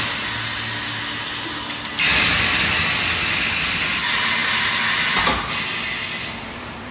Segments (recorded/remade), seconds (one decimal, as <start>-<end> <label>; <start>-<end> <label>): 0.0-6.9 recorded